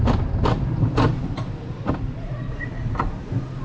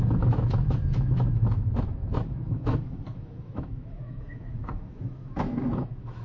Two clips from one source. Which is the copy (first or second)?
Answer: second